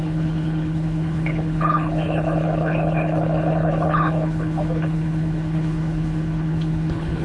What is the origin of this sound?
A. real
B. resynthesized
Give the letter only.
B